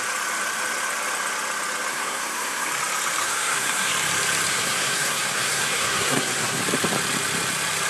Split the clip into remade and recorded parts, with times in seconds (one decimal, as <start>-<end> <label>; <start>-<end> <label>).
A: 0.0-1.9 recorded; 1.9-2.7 remade; 2.7-3.2 recorded; 3.2-3.9 remade; 3.9-4.5 recorded; 4.5-6.6 remade; 6.6-7.9 recorded